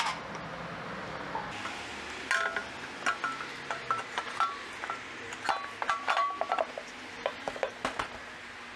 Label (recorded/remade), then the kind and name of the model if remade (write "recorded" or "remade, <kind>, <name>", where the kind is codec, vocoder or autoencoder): recorded